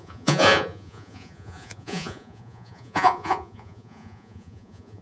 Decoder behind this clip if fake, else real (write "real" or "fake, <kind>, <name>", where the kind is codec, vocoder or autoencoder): fake, vocoder, Vocos